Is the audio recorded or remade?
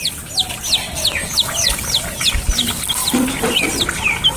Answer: recorded